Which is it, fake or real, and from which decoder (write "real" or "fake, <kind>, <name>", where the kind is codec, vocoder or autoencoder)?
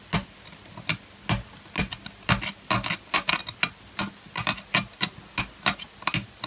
real